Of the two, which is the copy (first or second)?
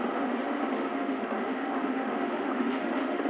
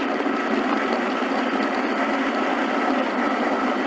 first